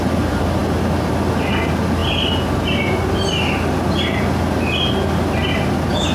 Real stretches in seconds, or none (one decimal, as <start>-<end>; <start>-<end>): 0.0-6.1